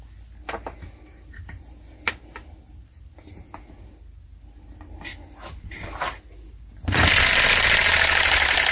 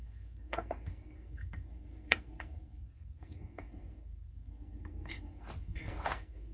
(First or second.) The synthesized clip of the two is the second